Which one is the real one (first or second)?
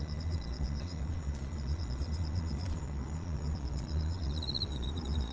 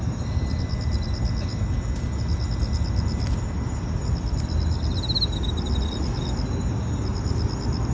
second